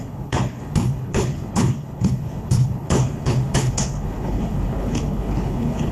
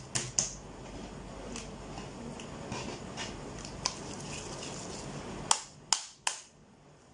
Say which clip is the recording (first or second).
second